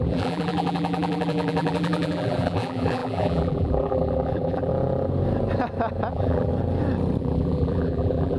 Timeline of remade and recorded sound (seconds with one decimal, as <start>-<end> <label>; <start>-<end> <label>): 0.0-4.7 remade; 4.7-6.1 recorded; 6.1-6.5 remade; 6.5-7.2 recorded; 7.2-8.4 remade